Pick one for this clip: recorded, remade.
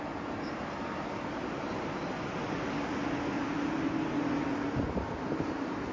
recorded